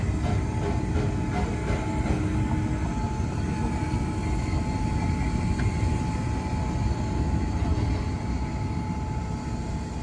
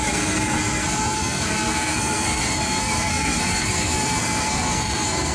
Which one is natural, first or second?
first